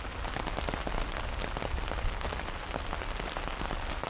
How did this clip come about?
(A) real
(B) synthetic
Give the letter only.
A